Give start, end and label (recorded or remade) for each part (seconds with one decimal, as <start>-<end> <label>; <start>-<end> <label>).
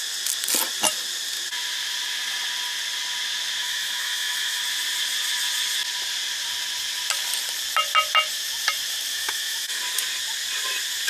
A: 0.0-3.6 recorded; 3.6-4.6 remade; 4.6-9.1 recorded; 9.1-9.8 remade; 9.8-11.1 recorded